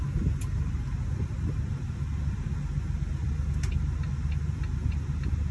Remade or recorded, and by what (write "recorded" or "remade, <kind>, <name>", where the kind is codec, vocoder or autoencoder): recorded